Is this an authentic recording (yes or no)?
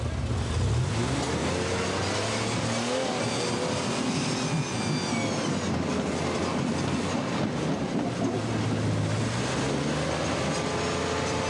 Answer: yes